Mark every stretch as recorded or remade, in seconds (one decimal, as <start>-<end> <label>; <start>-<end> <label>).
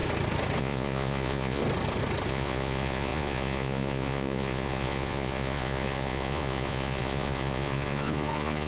0.0-0.6 recorded; 0.6-1.6 remade; 1.6-2.3 recorded; 2.3-8.7 remade